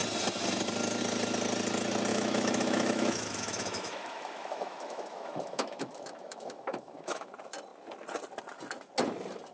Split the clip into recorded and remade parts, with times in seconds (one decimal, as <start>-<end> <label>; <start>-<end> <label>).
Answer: 0.0-2.1 recorded; 2.1-7.3 remade; 7.3-9.5 recorded

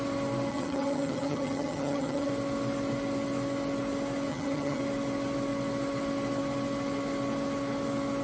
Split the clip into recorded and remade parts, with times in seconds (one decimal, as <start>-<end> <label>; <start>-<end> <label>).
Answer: 0.0-0.5 recorded; 0.5-2.3 remade; 2.3-4.3 recorded; 4.3-4.8 remade; 4.8-8.2 recorded

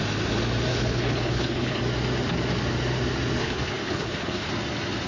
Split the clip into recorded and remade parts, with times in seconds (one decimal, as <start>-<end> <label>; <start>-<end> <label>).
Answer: 0.0-0.7 recorded; 0.7-1.8 remade; 1.8-3.4 recorded; 3.4-4.5 remade; 4.5-5.1 recorded

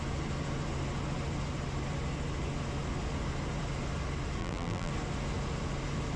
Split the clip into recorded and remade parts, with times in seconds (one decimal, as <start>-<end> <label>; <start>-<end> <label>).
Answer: 0.0-4.4 recorded; 4.4-4.9 remade; 4.9-6.2 recorded